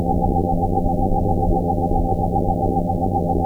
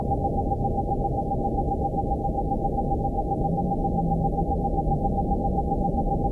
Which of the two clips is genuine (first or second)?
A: second